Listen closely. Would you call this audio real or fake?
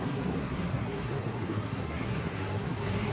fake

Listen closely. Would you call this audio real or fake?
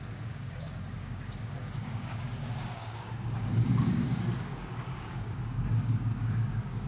fake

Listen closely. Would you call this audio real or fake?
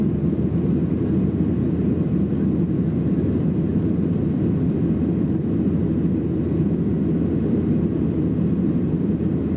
real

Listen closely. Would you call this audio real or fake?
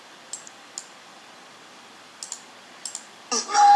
real